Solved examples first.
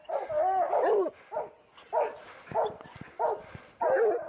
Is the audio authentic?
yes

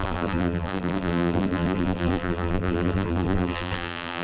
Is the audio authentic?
no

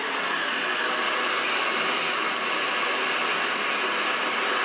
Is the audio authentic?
yes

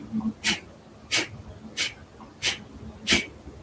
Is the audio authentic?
yes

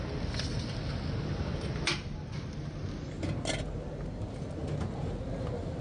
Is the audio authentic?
yes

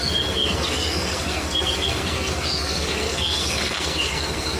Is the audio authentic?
no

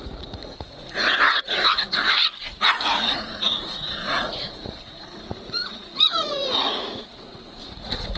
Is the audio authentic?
no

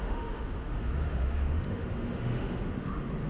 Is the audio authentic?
no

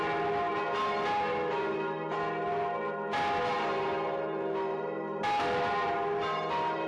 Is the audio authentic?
yes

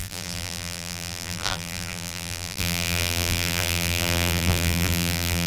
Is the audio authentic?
no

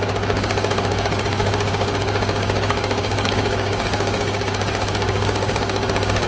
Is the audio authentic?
no